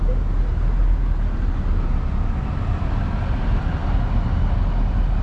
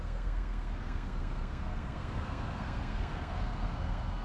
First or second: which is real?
first